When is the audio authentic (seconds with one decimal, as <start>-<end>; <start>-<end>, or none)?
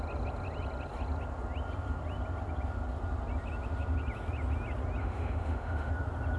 0.0-5.0; 5.9-6.4